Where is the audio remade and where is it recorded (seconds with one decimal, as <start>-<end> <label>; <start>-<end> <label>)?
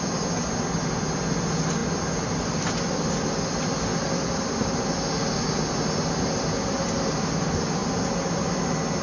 0.0-9.0 recorded